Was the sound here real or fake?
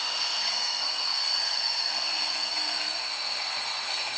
fake